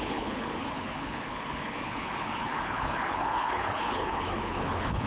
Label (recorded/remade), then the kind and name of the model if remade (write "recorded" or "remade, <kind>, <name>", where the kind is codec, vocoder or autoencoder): remade, codec, HILCodec